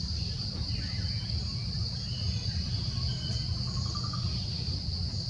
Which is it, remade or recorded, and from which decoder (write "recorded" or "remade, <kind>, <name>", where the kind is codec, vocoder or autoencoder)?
recorded